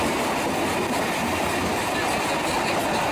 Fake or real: real